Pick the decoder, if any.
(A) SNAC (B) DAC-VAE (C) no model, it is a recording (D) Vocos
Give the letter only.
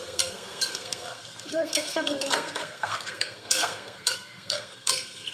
A